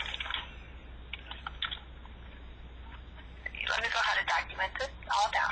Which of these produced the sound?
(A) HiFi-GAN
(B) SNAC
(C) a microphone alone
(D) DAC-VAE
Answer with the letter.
C